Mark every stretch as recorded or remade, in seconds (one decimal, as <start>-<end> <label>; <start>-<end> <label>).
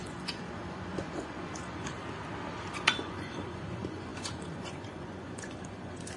0.0-2.0 remade; 2.0-2.7 recorded; 2.7-6.2 remade